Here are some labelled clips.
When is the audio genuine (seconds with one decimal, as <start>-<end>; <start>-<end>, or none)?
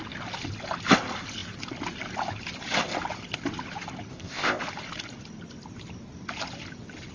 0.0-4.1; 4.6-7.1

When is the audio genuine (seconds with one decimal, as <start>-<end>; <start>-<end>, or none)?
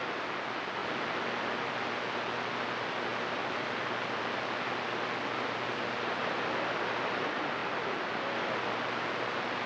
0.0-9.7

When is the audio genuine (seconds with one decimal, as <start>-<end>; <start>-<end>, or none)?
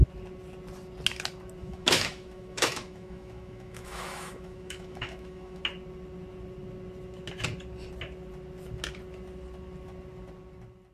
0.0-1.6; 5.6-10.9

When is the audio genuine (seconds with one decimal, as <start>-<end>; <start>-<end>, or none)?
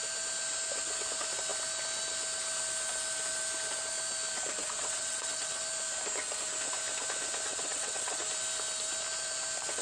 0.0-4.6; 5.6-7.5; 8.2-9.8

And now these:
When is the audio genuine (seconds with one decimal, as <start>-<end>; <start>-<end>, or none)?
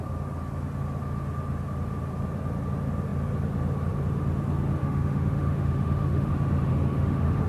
0.0-4.8; 6.3-6.7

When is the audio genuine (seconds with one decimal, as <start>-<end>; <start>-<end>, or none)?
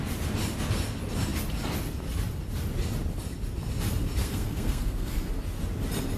0.0-4.2; 5.3-6.2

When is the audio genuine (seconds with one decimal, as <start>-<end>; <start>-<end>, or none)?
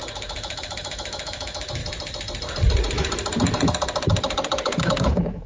1.8-4.8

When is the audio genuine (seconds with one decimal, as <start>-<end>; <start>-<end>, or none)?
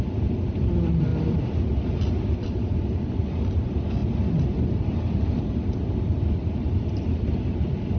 1.1-2.4